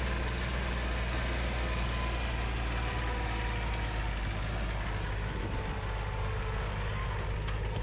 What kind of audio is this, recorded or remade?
recorded